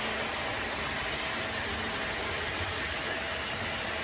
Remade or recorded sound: recorded